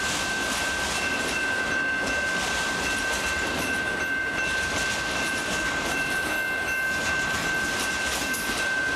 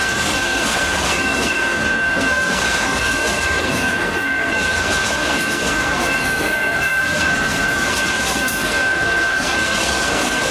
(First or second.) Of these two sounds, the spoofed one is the second